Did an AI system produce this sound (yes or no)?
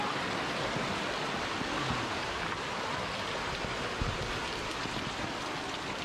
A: no